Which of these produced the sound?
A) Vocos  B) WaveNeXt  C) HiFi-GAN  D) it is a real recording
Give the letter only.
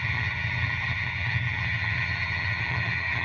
C